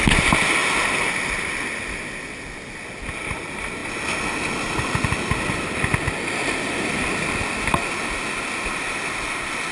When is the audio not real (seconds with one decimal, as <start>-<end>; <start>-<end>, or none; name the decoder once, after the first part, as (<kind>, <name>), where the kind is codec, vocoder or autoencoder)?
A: none